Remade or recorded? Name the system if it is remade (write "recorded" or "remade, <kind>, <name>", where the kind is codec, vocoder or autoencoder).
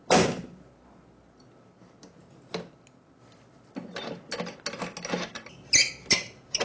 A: recorded